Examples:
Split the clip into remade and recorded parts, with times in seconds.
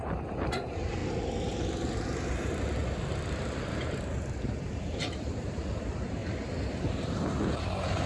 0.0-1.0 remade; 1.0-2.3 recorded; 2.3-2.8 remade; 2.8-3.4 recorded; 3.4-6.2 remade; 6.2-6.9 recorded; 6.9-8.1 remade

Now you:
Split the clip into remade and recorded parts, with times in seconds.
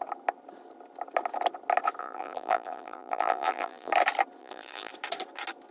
0.0-2.0 recorded; 2.0-3.9 remade; 3.9-4.4 recorded; 4.4-4.9 remade; 4.9-5.7 recorded